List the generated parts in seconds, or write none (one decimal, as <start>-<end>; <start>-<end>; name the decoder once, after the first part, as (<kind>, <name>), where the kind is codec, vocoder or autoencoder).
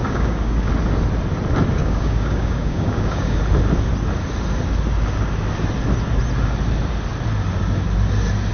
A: 0.0-0.7 (codec, DAC); 1.8-3.4